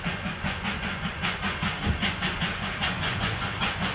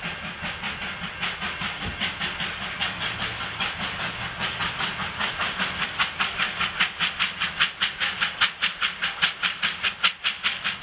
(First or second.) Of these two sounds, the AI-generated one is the first